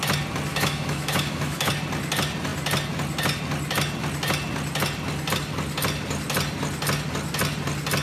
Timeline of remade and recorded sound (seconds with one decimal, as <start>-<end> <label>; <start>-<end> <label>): 0.0-0.5 recorded; 0.5-1.7 remade; 1.7-8.0 recorded